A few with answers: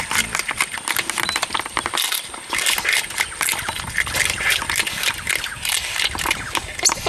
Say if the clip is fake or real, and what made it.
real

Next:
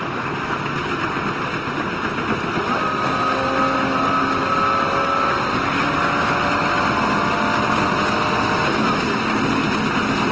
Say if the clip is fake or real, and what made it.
real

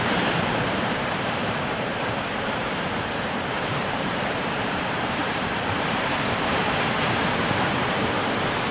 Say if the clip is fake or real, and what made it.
fake, vocoder, BigVGAN v2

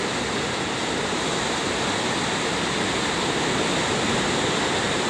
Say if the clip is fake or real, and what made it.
real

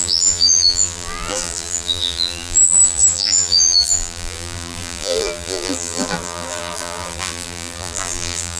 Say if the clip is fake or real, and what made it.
fake, vocoder, BigVGAN v2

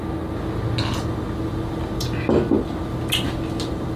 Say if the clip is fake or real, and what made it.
real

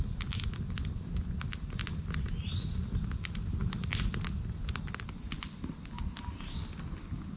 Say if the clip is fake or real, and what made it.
real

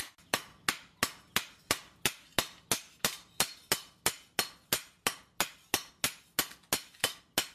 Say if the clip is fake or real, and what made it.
real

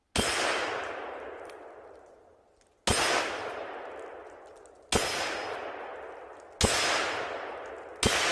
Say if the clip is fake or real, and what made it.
real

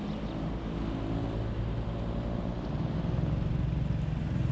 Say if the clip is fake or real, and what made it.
real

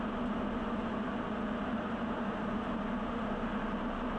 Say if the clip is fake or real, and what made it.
real